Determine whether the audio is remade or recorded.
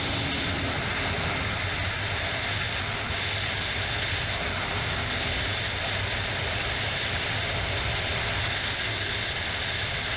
recorded